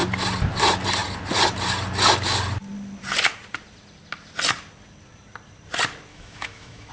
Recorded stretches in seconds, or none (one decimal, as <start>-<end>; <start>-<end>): 0.0-6.1